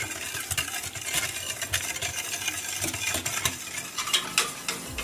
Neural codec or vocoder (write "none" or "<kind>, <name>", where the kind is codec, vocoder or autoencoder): none